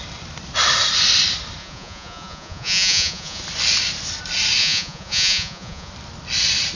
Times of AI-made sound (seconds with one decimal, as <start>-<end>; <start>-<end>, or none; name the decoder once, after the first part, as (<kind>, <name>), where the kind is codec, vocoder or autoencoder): 1.6-3.4 (vocoder, Vocos); 4.6-5.9